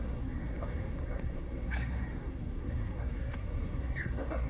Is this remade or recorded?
remade